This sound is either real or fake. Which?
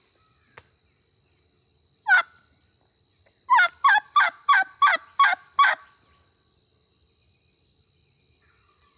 real